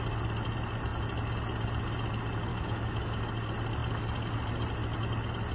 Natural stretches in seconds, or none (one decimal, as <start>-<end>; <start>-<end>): 0.0-2.5; 3.2-5.5